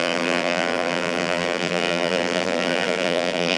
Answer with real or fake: fake